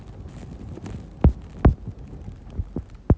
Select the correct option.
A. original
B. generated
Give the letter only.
A